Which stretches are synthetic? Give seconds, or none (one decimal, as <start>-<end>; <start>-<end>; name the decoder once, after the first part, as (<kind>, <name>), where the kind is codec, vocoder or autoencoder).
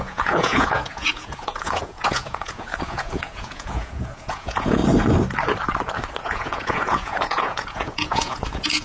0.0-4.8 (vocoder, Vocos); 6.2-8.8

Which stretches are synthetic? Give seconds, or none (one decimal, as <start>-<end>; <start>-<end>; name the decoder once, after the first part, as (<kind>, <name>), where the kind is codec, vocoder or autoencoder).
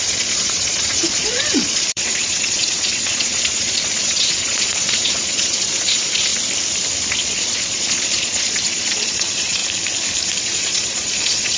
0.0-6.3 (vocoder, Vocos); 7.1-9.6; 10.4-11.6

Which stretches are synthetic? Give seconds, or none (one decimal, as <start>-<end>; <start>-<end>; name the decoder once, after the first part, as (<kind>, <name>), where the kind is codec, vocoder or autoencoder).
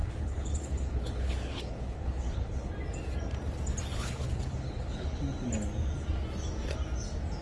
0.0-2.7 (codec, HILCodec); 3.9-5.2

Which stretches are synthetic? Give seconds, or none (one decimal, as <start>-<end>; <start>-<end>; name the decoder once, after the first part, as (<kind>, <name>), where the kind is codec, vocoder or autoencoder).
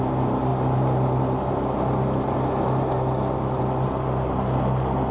none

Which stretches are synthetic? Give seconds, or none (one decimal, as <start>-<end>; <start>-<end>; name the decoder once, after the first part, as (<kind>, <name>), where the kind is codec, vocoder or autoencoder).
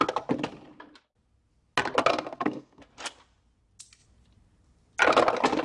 2.1-2.8 (codec, SNAC)